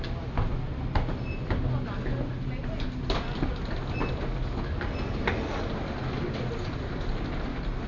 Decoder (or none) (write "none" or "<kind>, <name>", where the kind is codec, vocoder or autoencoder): none